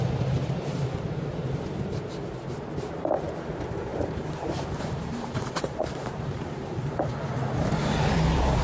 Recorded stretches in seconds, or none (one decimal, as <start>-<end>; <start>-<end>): 0.0-3.9; 6.9-8.6